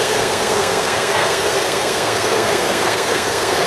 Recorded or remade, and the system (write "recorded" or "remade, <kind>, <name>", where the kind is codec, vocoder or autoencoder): remade, codec, SNAC